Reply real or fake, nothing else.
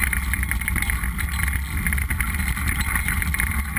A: real